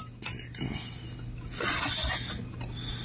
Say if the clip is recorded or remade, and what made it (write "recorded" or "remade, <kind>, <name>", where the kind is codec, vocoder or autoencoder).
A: recorded